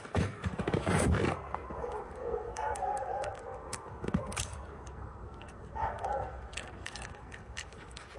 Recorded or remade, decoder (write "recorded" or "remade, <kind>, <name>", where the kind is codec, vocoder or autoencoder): remade, codec, SNAC